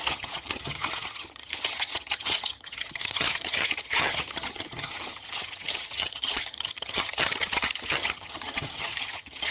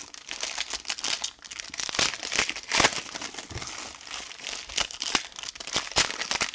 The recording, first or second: second